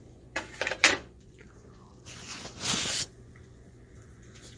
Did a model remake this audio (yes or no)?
yes